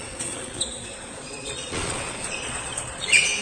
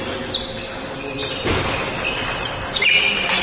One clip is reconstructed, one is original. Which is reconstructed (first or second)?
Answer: first